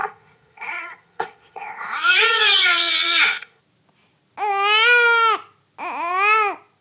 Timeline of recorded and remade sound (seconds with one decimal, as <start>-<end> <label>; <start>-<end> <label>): 0.0-3.6 remade; 3.6-6.8 recorded